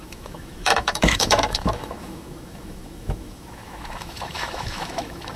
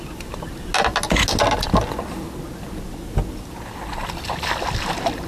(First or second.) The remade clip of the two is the first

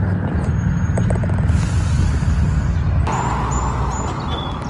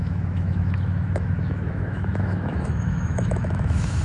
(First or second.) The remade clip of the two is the second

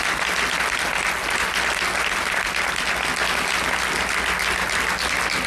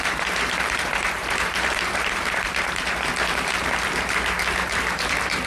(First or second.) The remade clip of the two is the second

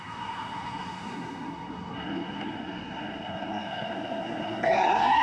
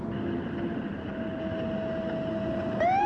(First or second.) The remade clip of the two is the first